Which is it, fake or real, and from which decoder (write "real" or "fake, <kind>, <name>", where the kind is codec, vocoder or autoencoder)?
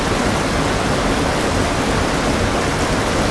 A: real